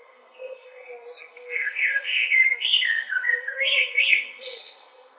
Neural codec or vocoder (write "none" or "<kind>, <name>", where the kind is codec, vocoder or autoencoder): codec, SNAC